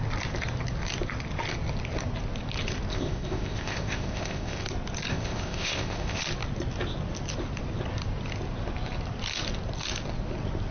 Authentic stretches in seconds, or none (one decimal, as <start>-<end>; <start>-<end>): 0.0-2.9; 4.6-5.1; 6.2-10.7

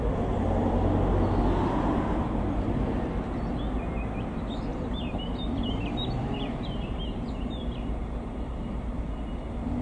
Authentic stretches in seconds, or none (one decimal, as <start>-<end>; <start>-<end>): 0.0-4.7; 9.0-9.8

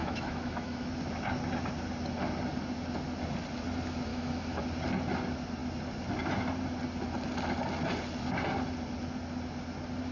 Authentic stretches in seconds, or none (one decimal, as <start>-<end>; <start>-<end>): 0.9-4.1; 4.6-10.1

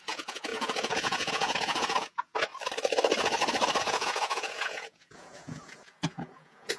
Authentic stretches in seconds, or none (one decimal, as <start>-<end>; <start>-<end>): 2.5-3.8

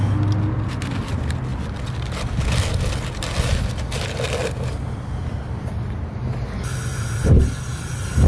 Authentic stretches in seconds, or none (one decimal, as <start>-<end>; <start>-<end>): 0.0-8.3

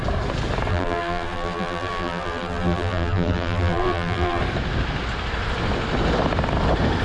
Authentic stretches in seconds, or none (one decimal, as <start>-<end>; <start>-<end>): 0.0-0.7; 4.4-7.0

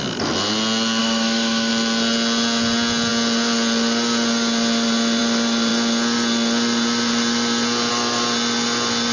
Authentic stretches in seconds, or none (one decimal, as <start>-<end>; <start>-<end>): 0.0-1.0; 1.7-9.1

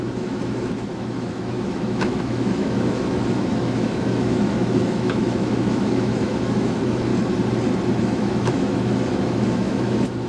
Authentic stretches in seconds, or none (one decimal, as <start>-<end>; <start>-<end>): 7.1-8.0